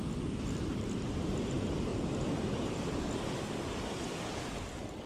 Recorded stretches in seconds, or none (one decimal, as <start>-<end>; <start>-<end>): 1.9-2.4